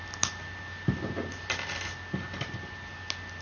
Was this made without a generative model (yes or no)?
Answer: yes